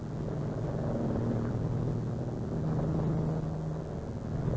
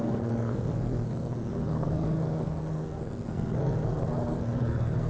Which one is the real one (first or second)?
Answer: first